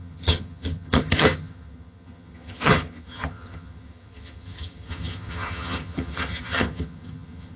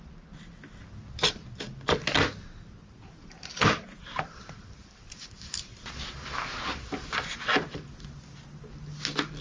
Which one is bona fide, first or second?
second